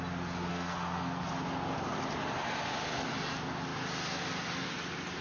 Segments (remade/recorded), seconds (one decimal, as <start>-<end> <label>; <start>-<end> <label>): 0.0-0.5 recorded; 0.5-1.2 remade; 1.2-5.2 recorded